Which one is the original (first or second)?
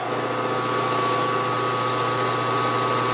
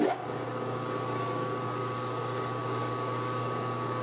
first